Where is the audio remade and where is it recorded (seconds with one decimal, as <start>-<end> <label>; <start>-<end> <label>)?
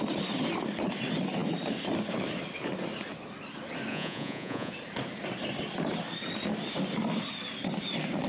0.0-3.9 recorded; 3.9-4.7 remade; 4.7-8.3 recorded